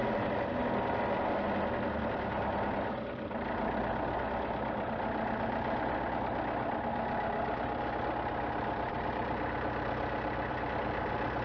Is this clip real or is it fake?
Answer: real